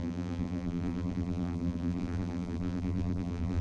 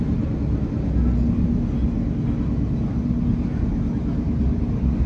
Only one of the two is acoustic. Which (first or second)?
second